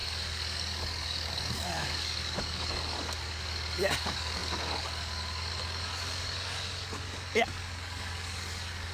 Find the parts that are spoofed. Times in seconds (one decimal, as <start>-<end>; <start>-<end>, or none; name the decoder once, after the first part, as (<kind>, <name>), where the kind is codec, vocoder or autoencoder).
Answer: 0.0-8.9 (codec, DAC)